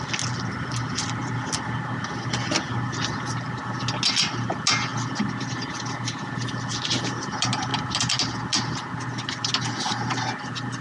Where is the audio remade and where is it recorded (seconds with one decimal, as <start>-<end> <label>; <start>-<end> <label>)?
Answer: 0.0-10.8 recorded